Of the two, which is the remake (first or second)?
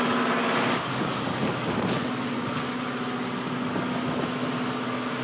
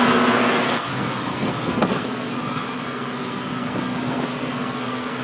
second